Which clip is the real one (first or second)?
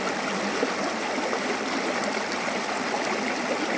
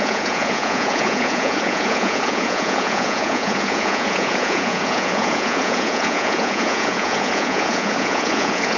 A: first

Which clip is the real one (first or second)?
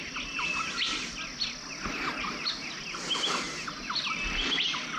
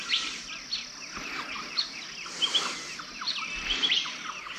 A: first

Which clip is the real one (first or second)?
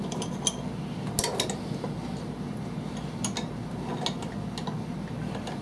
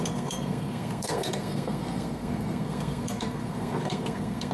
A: first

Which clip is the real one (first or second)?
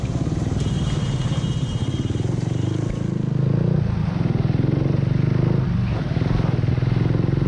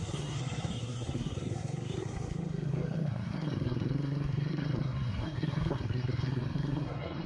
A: first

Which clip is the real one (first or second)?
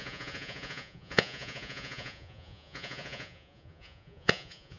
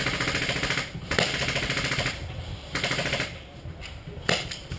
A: second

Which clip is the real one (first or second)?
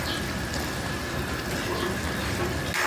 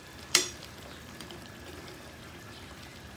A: first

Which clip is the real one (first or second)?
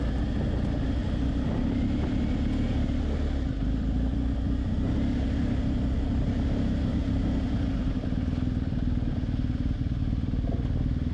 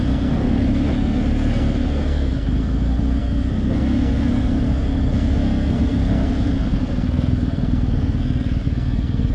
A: first